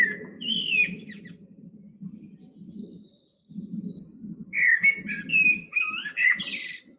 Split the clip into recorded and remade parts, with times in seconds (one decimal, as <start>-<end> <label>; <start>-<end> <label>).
0.0-7.0 recorded

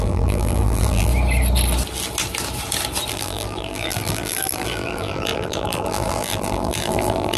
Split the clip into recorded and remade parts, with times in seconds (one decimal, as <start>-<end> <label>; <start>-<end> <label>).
0.0-1.1 remade; 1.1-3.1 recorded; 3.1-7.4 remade

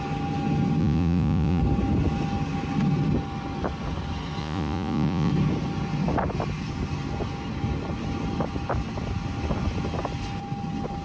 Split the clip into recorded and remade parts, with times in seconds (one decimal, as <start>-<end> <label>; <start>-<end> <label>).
0.0-0.8 recorded; 0.8-1.6 remade; 1.6-4.4 recorded; 4.4-5.3 remade; 5.3-11.0 recorded

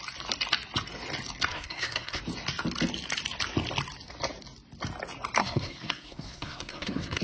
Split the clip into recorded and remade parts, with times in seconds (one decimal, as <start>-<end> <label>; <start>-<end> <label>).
0.0-1.5 recorded; 1.5-2.2 remade; 2.2-5.4 recorded; 5.4-7.2 remade

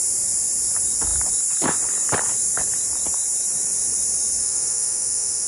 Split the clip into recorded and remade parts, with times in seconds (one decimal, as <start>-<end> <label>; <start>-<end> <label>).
0.0-4.4 recorded; 4.4-5.5 remade